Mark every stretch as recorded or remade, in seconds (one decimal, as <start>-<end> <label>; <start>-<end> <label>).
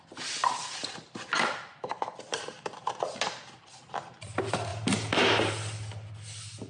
0.0-0.4 recorded; 0.4-1.1 remade; 1.1-2.3 recorded; 2.3-3.1 remade; 3.1-4.7 recorded; 4.7-5.5 remade; 5.5-6.7 recorded